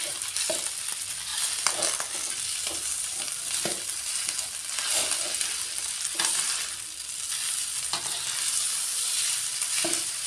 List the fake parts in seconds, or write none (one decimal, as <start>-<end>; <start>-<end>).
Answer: none